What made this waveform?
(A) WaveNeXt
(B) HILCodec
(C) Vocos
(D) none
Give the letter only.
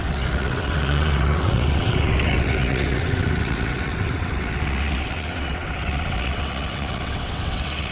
A